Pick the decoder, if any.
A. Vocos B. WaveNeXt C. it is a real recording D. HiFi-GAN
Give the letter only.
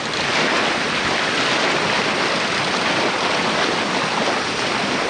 C